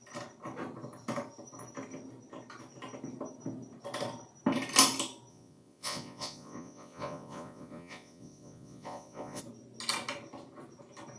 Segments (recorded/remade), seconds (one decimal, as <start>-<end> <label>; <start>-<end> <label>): 0.0-5.3 recorded; 5.3-9.4 remade; 9.4-11.2 recorded